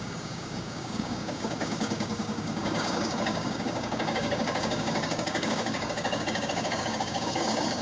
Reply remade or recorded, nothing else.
remade